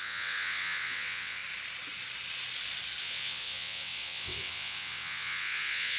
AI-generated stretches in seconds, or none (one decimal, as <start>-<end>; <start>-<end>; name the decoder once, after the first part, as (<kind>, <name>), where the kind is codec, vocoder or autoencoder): 0.0-1.4 (vocoder, WaveNeXt); 3.0-6.0